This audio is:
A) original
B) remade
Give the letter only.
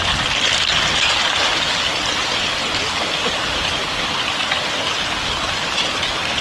A